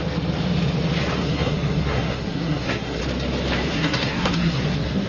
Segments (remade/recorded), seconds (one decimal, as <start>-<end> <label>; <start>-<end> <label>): 0.0-1.2 recorded; 1.2-3.0 remade; 3.0-3.7 recorded; 3.7-5.1 remade